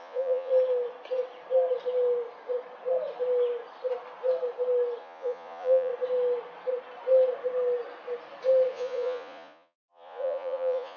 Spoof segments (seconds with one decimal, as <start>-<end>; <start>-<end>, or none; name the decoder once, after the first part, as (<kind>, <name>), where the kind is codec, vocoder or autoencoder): 0.0-0.5 (vocoder, Vocos); 5.0-5.9; 8.7-11.0